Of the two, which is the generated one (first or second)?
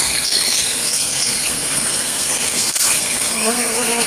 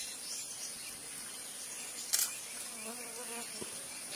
first